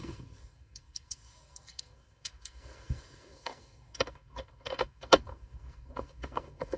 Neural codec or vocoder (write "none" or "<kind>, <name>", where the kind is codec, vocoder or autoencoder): codec, SNAC